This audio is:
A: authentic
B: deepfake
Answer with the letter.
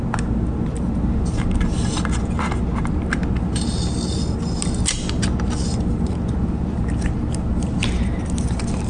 A